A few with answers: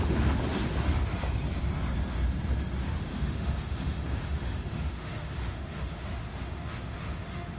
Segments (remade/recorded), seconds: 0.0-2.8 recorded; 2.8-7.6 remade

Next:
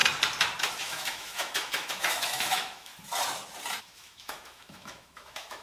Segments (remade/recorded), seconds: 0.0-0.8 recorded; 0.8-2.9 remade; 2.9-3.8 recorded; 3.8-5.6 remade

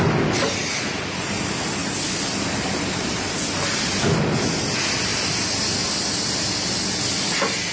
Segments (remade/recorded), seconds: 0.0-7.7 recorded

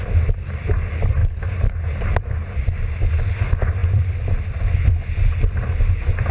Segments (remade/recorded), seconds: 0.0-6.3 recorded

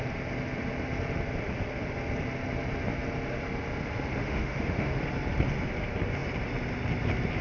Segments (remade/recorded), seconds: 0.0-4.2 recorded; 4.2-5.0 remade; 5.0-7.4 recorded

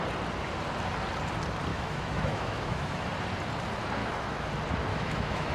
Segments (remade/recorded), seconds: 0.0-1.7 recorded; 1.7-3.1 remade; 3.1-4.0 recorded; 4.0-4.5 remade; 4.5-4.9 recorded; 4.9-5.5 remade

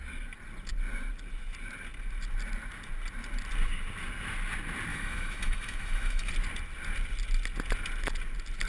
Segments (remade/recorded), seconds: 0.0-4.9 recorded; 4.9-6.3 remade; 6.3-8.7 recorded

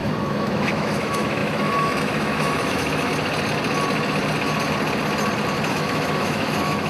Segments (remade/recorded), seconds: 0.0-3.1 remade; 3.1-5.7 recorded; 5.7-6.9 remade